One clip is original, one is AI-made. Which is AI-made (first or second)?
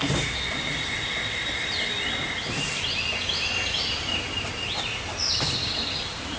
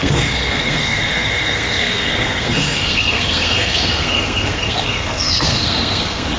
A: second